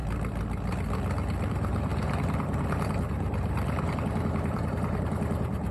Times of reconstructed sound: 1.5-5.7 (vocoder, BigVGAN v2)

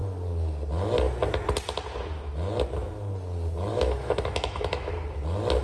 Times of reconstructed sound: 3.7-4.9 (autoencoder, DAC-VAE)

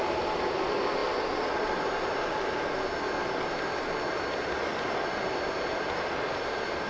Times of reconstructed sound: none

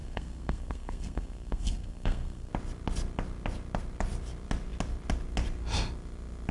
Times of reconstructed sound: 0.0-2.5 (codec, SNAC)